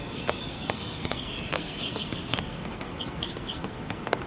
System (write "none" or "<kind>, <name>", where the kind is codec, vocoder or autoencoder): codec, SNAC